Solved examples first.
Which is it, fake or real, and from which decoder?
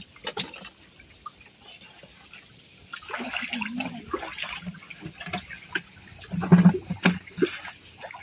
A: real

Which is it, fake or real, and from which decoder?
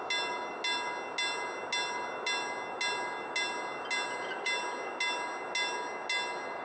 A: real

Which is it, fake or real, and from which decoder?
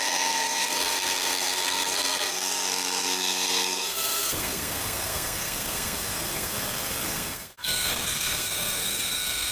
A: fake, codec, SNAC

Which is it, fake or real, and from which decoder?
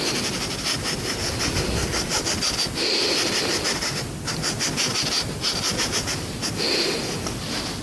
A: real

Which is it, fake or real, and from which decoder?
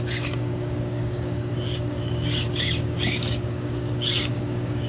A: fake, codec, DAC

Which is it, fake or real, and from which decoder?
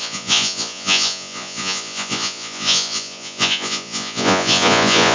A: fake, vocoder, Vocos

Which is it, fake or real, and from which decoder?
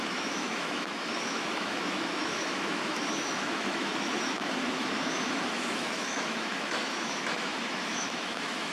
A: fake, autoencoder, DAC-VAE